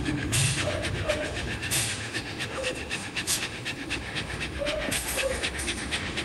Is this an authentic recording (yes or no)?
no